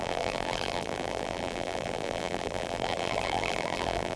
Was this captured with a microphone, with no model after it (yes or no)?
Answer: no